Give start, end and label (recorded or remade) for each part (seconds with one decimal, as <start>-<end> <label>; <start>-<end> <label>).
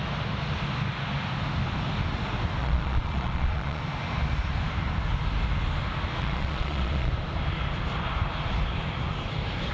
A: 0.0-2.6 recorded; 2.6-3.8 remade; 3.8-6.2 recorded; 6.2-7.1 remade; 7.1-9.7 recorded